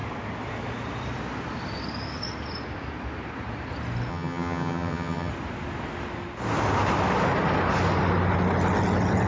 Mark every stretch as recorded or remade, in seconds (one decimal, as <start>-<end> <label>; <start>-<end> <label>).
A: 0.0-4.1 recorded; 4.1-5.3 remade; 5.3-9.3 recorded